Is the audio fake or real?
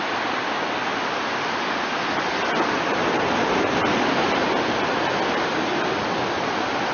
real